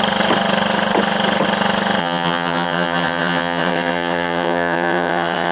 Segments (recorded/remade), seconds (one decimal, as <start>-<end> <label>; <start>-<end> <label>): 0.0-2.0 recorded; 2.0-5.5 remade